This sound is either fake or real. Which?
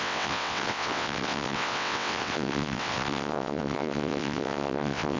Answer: fake